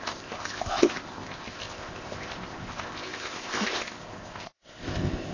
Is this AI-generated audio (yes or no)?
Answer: yes